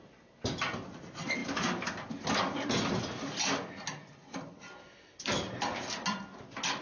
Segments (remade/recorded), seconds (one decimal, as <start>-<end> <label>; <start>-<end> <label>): 0.0-6.8 recorded